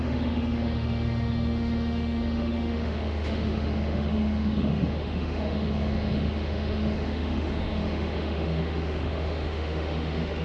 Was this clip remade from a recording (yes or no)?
yes